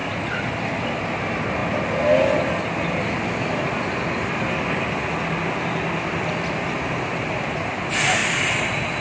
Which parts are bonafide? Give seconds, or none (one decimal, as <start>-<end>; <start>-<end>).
0.0-9.0

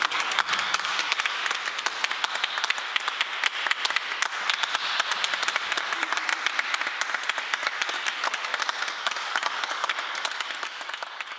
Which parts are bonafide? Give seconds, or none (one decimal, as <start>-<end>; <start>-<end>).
1.4-5.8; 6.3-7.4; 8.5-9.0

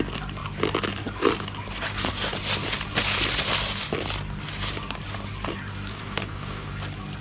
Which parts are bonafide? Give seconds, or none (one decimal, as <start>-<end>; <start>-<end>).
0.0-5.9; 6.7-7.2